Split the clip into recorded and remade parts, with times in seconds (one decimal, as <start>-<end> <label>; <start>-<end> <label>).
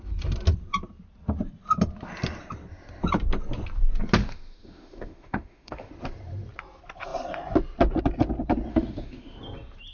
0.0-4.2 recorded; 4.2-5.9 remade; 5.9-8.7 recorded; 8.7-9.4 remade; 9.4-9.9 recorded